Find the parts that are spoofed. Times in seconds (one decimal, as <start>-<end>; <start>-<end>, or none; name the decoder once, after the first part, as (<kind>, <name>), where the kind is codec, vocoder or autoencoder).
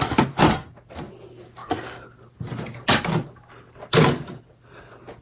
none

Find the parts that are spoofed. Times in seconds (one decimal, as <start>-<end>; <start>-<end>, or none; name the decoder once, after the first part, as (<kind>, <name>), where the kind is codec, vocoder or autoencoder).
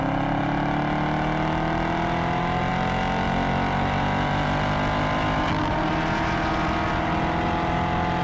none